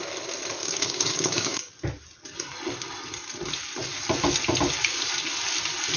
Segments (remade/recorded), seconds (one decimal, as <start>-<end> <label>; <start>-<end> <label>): 0.0-0.6 recorded; 0.6-1.7 remade; 1.7-6.0 recorded

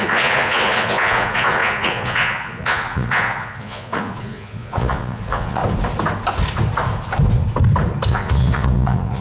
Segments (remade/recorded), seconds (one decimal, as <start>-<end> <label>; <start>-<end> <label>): 0.0-5.6 remade; 5.6-8.1 recorded; 8.1-9.2 remade

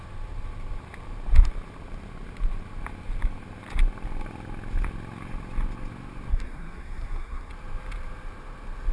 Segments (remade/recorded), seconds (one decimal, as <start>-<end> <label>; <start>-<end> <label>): 0.0-6.3 recorded; 6.3-7.5 remade; 7.5-8.9 recorded

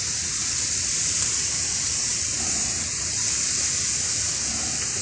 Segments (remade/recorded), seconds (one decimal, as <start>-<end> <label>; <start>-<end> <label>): 0.0-5.0 recorded